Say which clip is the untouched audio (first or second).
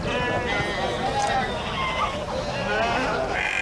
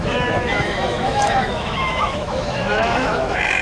first